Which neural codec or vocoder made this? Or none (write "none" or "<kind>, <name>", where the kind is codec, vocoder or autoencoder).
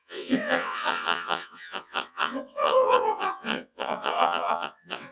vocoder, WaveNeXt